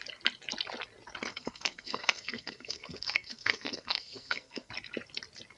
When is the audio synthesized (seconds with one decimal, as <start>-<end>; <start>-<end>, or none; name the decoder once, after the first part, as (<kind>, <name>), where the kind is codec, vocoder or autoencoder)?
1.3-4.7 (codec, SNAC)